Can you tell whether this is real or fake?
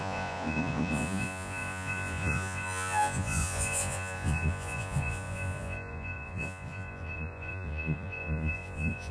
fake